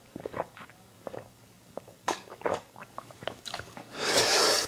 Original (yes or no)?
no